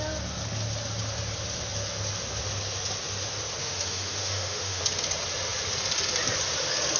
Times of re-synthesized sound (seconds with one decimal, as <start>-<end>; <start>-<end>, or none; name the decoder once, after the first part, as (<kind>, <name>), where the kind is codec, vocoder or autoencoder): 3.6-4.8 (autoencoder, DAC-VAE)